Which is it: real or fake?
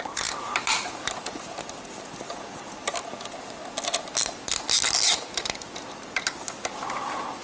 real